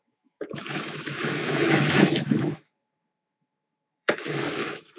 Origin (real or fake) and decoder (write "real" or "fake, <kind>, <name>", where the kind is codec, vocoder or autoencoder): fake, autoencoder, DAC-VAE